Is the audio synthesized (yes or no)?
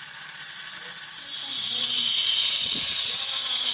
yes